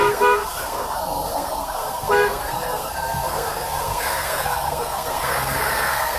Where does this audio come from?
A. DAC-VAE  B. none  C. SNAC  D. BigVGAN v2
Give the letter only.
C